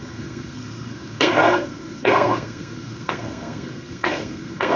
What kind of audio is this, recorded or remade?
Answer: remade